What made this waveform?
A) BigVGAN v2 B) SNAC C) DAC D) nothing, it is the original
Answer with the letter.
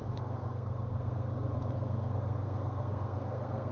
B